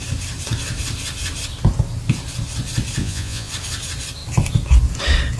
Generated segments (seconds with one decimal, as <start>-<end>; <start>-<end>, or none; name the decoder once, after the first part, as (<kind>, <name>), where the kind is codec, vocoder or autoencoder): 3.0-3.5 (vocoder, Vocos)